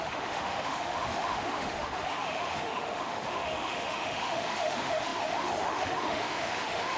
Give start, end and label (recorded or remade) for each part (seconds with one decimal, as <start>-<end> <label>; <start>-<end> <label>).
0.0-7.0 remade